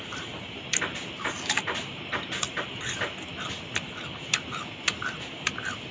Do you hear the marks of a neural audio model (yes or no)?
no